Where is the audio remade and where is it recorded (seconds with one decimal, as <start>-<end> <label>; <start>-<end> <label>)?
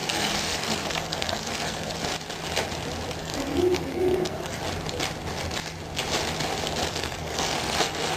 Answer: 0.0-2.0 remade; 2.0-3.2 recorded; 3.2-4.6 remade; 4.6-6.9 recorded; 6.9-8.2 remade